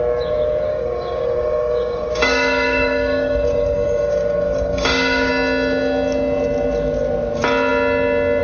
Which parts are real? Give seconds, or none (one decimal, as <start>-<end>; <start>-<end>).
0.0-0.7; 5.3-8.4